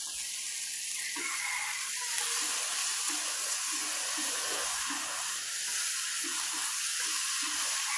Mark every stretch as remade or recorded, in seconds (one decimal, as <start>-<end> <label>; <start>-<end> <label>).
0.0-2.8 recorded; 2.8-5.1 remade; 5.1-8.0 recorded